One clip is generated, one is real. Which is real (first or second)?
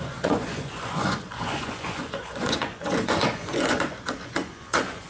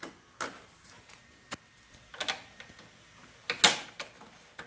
second